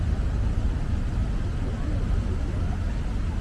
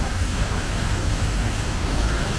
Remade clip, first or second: second